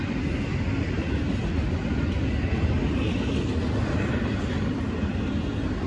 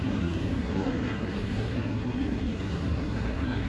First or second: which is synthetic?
second